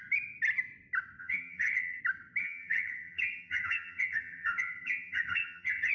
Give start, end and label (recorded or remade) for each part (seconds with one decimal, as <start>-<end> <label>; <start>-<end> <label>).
0.0-1.2 recorded; 1.2-2.0 remade; 2.0-2.4 recorded; 2.4-5.9 remade